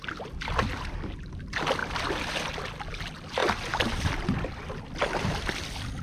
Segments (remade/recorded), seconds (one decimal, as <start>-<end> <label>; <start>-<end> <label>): 0.0-6.0 recorded